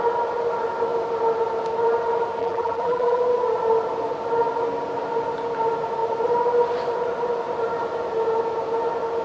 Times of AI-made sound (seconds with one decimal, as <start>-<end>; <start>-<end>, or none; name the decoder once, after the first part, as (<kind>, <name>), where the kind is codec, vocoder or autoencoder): 2.4-3.2 (vocoder, BigVGAN v2)